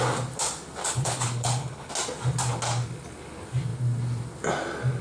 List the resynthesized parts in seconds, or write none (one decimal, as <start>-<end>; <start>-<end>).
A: 0.8-1.9